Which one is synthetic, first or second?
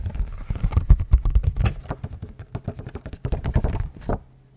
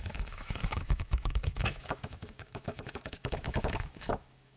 second